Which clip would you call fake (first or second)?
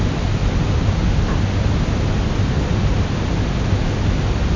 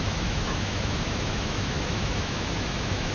second